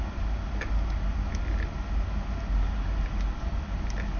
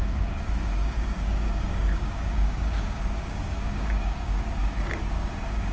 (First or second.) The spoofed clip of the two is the second